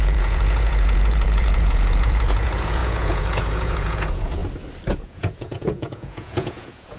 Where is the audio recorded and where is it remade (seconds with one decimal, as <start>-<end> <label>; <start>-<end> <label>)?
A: 0.0-4.4 remade; 4.4-4.9 recorded; 4.9-7.0 remade